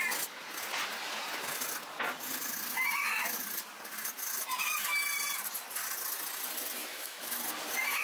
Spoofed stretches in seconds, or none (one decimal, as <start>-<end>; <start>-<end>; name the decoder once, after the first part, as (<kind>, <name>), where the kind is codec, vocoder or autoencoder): 6.8-7.4 (autoencoder, DAC-VAE)